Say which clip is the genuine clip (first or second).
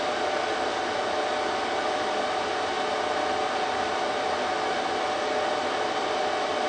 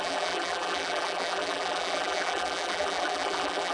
first